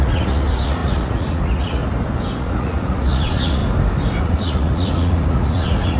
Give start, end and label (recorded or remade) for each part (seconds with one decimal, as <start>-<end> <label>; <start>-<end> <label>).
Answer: 0.0-1.8 remade; 1.8-2.4 recorded; 2.4-3.6 remade; 3.6-4.2 recorded; 4.2-6.0 remade